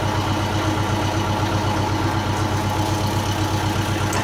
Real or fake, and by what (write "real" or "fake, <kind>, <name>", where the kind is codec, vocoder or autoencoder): real